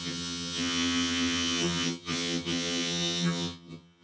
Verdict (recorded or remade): remade